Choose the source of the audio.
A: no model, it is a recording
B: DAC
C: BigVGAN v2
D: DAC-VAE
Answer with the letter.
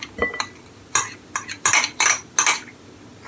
A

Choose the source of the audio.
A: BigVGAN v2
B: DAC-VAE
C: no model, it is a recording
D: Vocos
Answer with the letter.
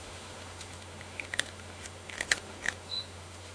B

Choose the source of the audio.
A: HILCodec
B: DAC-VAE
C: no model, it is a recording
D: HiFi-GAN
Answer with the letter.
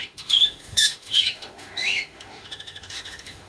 B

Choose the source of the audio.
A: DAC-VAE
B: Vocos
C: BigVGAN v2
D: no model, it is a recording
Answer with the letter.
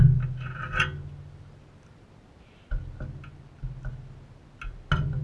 D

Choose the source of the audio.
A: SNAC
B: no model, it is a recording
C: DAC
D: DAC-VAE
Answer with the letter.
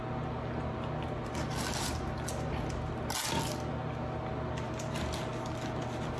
B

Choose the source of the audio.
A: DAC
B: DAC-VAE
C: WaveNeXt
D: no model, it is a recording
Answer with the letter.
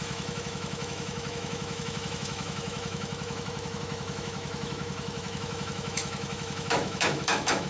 B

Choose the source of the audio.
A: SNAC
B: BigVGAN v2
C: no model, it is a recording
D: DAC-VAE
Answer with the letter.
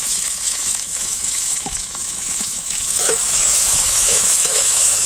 D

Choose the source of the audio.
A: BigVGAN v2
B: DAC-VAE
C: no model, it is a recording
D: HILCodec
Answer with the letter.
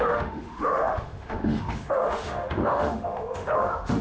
B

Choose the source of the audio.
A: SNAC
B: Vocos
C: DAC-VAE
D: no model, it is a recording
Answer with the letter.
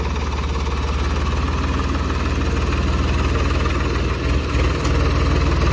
D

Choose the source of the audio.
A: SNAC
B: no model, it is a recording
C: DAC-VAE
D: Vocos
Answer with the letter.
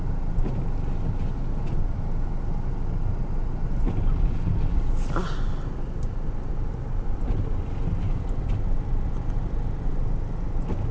B